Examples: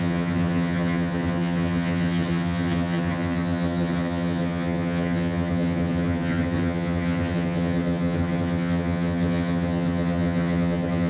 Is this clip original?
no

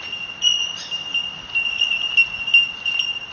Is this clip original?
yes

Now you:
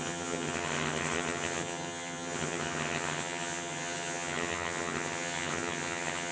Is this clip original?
no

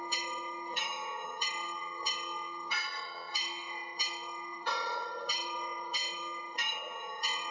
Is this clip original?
no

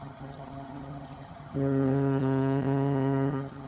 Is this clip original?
no